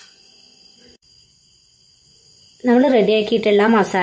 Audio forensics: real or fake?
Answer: fake